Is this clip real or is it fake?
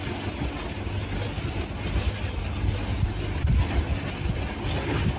real